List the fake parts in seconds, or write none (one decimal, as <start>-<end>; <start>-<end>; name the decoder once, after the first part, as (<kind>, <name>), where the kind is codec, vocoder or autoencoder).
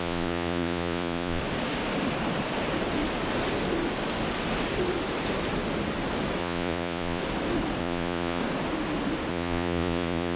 0.0-1.4 (vocoder, Vocos); 6.4-7.2; 7.8-8.4; 9.3-10.4